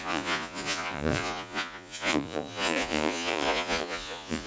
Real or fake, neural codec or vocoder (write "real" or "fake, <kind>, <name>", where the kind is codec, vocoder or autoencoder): fake, vocoder, Vocos